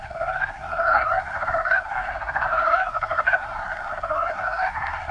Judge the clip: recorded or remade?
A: remade